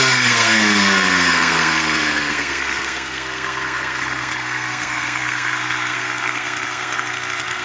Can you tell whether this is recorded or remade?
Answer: remade